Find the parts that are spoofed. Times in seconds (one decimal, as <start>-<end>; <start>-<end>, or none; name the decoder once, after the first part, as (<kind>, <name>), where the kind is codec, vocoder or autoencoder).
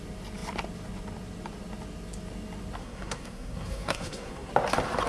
2.8-4.5 (codec, SNAC)